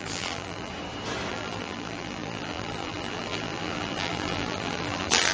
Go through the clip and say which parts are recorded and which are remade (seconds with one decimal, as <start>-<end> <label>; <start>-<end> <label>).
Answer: 0.0-0.7 remade; 0.7-1.3 recorded; 1.3-5.3 remade